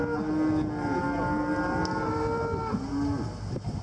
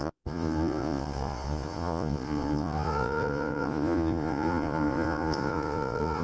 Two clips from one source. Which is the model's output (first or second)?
second